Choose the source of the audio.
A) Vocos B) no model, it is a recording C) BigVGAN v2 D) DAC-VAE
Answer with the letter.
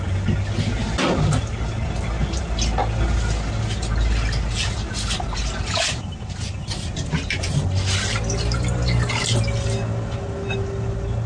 B